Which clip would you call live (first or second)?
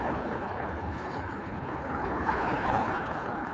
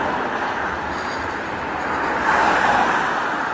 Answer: second